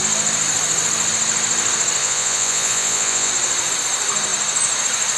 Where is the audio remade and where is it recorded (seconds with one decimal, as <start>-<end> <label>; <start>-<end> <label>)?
0.0-2.0 recorded; 2.0-3.3 remade; 3.3-5.2 recorded